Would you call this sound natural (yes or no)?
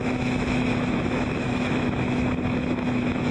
no